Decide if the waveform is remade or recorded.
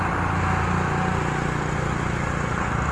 recorded